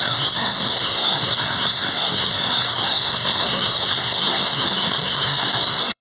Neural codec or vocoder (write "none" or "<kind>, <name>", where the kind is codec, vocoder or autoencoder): codec, SNAC